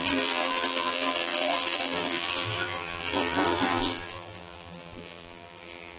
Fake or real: fake